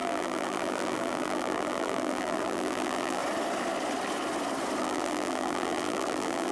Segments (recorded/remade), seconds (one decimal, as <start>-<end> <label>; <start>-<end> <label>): 0.0-3.2 remade; 3.2-4.8 recorded; 4.8-6.5 remade